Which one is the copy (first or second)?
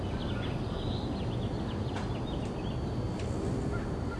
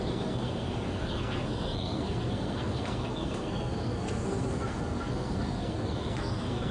second